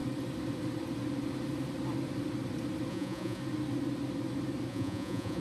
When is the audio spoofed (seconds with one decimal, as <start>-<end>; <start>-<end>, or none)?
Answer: 2.9-3.4; 4.7-5.4

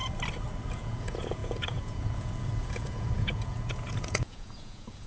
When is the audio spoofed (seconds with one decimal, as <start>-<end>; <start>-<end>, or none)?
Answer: 0.7-5.1

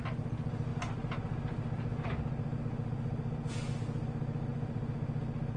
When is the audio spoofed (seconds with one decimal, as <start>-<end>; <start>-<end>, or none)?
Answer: none

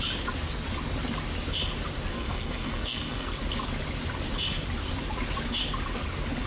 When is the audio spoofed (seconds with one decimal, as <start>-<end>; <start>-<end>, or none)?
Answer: 2.1-3.4

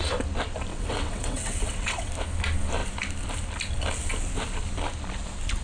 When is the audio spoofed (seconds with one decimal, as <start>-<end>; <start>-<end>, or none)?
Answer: 0.7-2.1

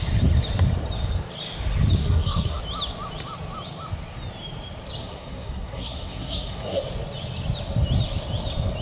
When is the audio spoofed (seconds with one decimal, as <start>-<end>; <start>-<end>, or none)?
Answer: 2.0-2.6; 5.0-6.8